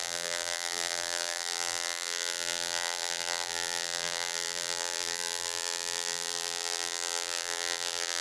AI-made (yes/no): yes